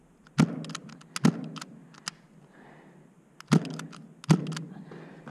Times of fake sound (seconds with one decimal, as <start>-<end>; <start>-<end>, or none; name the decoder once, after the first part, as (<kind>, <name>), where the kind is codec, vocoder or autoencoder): none